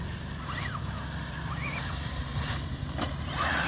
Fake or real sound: fake